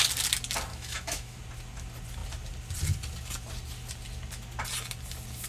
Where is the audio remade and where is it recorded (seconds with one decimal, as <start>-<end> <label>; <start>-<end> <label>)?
0.0-0.7 recorded; 0.7-1.4 remade; 1.4-5.5 recorded